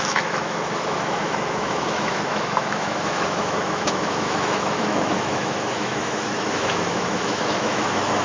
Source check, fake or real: fake